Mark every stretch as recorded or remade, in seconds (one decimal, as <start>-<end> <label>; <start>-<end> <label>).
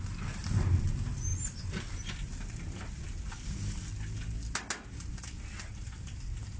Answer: 0.0-6.6 recorded